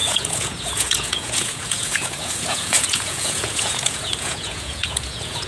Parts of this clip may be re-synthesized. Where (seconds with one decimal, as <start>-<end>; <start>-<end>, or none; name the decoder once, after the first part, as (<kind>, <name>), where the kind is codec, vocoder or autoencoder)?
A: 0.0-5.5 (vocoder, Vocos)

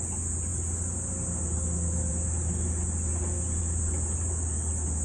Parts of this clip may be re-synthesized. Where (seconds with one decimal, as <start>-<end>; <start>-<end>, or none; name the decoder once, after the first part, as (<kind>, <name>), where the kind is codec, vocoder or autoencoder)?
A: none

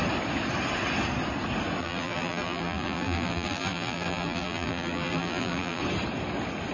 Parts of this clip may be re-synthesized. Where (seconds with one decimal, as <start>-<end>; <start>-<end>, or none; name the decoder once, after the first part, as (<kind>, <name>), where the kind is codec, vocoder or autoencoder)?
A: 1.8-5.8 (vocoder, BigVGAN v2)

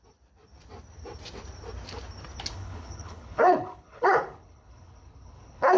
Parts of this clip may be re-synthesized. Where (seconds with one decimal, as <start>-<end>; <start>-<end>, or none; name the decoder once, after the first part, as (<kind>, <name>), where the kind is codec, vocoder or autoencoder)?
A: 2.5-5.8 (codec, HILCodec)

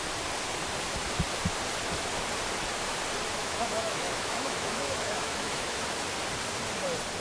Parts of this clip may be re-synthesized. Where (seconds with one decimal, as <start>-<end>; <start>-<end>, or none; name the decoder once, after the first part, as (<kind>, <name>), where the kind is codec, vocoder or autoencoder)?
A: 3.4-5.8 (autoencoder, DAC-VAE)

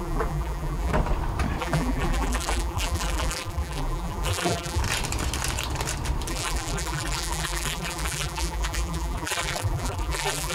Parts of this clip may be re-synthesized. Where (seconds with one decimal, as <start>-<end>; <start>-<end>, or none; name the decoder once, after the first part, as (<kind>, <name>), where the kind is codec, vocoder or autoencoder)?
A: 0.0-0.9 (vocoder, BigVGAN v2); 1.6-4.8; 6.3-10.5